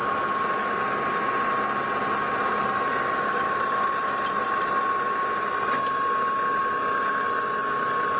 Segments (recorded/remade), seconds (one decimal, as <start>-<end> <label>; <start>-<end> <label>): 0.0-8.2 recorded